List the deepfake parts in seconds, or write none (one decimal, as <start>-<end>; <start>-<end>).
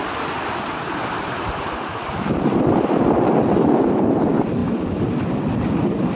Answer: none